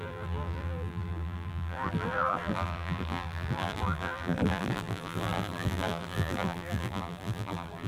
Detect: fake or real fake